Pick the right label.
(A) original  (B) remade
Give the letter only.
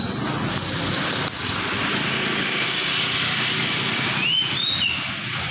A